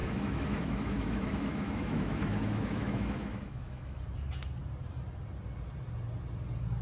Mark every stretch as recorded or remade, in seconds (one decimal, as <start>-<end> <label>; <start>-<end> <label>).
0.0-4.0 remade; 4.0-6.8 recorded